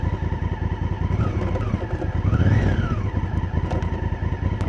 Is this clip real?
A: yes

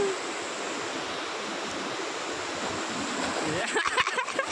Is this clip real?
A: yes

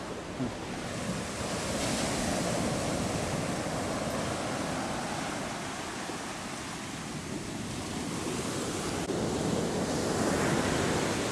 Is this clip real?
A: yes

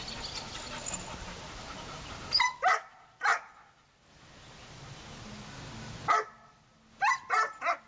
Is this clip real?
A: yes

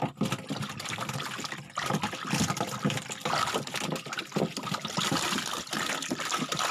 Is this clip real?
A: yes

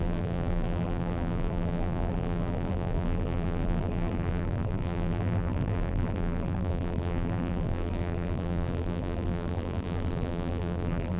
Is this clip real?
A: no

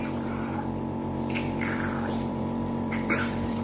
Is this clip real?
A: no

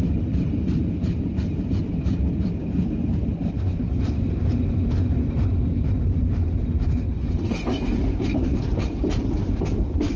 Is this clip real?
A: no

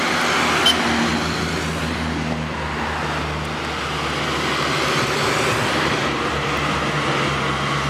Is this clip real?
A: yes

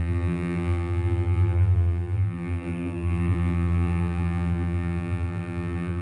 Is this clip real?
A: no